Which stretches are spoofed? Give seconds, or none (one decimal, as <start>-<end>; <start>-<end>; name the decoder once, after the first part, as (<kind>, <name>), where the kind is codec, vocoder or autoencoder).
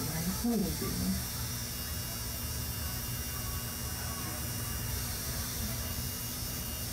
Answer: 0.0-0.6 (vocoder, BigVGAN v2); 4.2-6.9